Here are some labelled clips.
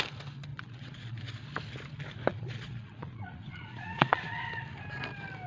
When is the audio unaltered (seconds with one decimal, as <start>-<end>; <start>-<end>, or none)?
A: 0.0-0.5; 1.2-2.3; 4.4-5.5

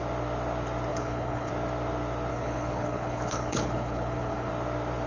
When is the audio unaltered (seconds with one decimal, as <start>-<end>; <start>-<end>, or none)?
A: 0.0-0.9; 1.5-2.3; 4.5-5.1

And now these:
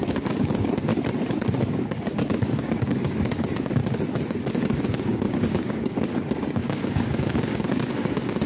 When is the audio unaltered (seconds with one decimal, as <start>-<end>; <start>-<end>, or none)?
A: 0.9-1.6; 3.8-4.5

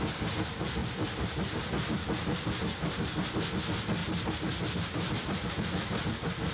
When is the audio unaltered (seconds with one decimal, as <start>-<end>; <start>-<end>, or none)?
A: 0.0-0.8; 1.6-4.0; 5.5-6.5